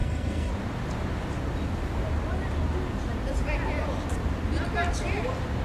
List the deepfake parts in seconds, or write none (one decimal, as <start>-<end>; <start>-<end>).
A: 0.0-0.5